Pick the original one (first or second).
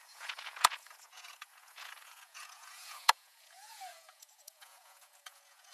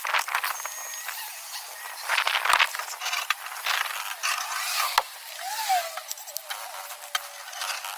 second